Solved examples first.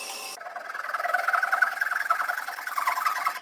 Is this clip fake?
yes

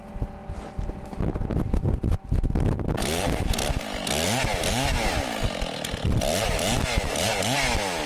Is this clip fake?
no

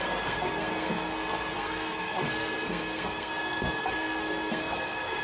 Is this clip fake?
yes